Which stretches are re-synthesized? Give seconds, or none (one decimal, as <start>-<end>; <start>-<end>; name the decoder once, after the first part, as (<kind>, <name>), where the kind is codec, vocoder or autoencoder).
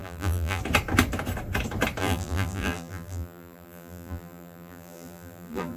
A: 0.0-0.6 (vocoder, BigVGAN v2); 2.0-5.8